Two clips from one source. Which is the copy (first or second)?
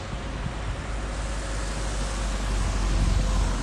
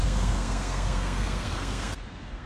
second